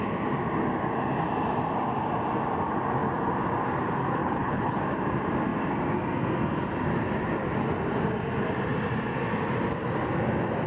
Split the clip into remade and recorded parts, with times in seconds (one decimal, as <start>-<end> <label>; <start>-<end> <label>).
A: 0.0-4.2 recorded; 4.2-4.8 remade; 4.8-10.7 recorded